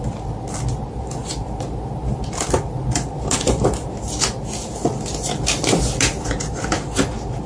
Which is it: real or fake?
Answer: real